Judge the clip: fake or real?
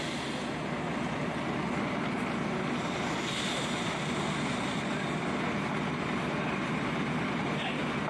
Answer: real